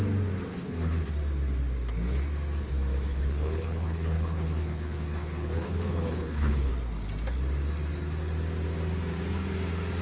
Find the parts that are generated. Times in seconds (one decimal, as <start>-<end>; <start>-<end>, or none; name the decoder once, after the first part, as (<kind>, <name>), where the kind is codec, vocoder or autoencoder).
0.5-1.1 (codec, HILCodec); 3.1-6.7